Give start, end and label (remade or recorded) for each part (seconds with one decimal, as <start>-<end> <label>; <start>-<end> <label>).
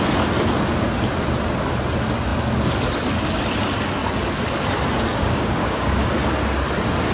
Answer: 0.0-5.1 recorded; 5.1-6.1 remade; 6.1-7.1 recorded